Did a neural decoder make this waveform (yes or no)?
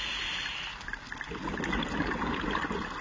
no